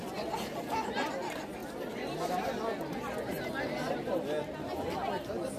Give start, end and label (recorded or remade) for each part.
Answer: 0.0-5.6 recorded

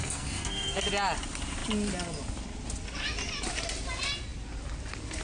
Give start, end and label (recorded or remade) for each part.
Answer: 0.0-0.8 remade; 0.8-5.2 recorded